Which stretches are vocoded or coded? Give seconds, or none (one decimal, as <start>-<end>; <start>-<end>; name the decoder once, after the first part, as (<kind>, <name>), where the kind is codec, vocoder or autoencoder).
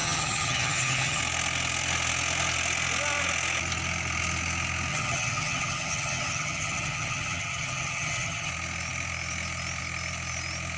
0.0-1.2 (vocoder, HiFi-GAN); 4.9-8.5